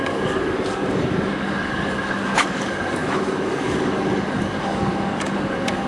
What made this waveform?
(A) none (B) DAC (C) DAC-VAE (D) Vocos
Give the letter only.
B